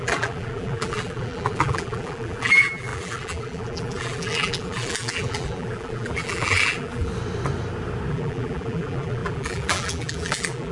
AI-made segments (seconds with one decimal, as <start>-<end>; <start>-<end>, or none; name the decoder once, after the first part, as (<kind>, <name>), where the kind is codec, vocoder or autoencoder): 0.0-7.1 (vocoder, BigVGAN v2); 8.1-10.7